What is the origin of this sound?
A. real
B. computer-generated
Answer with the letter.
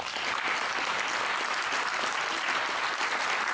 A